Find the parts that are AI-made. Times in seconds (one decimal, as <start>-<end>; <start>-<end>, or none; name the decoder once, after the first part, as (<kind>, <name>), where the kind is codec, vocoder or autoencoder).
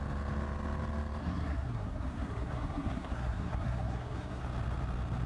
1.2-4.4 (codec, SNAC)